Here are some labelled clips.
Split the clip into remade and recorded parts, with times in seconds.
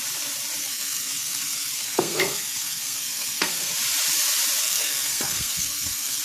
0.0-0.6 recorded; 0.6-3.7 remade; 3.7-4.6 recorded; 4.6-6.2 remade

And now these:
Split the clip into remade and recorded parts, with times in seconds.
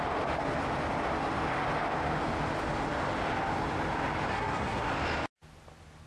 0.0-4.3 recorded; 4.3-4.9 remade; 4.9-6.1 recorded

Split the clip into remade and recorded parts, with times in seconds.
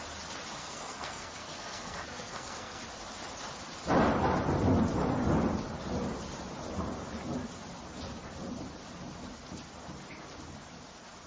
0.0-0.6 recorded; 0.6-2.8 remade; 2.8-11.3 recorded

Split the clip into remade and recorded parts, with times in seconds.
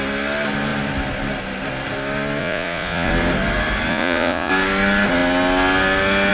0.0-2.4 recorded; 2.4-3.1 remade; 3.1-3.9 recorded; 3.9-4.5 remade; 4.5-6.3 recorded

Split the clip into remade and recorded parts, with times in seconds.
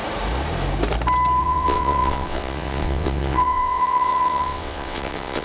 0.0-1.4 recorded; 1.4-5.4 remade